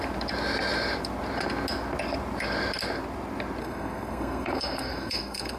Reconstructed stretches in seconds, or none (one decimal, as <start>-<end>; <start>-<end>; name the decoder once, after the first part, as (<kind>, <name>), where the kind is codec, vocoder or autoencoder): 3.6-5.6 (codec, SNAC)